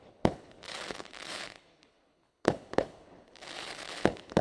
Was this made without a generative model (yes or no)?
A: no